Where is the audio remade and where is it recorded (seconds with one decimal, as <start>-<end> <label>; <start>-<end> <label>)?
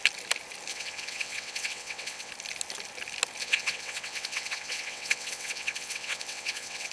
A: 0.0-0.7 recorded; 0.7-2.3 remade; 2.3-3.4 recorded; 3.4-6.9 remade